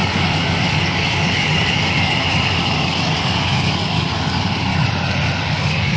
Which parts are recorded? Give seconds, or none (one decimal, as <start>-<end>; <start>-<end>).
4.7-5.4